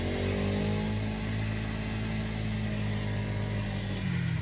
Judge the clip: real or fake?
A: real